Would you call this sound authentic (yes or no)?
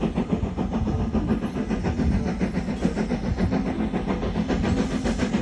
yes